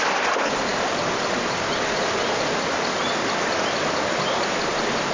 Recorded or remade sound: recorded